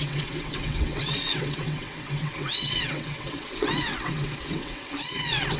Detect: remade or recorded remade